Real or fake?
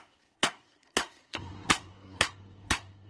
fake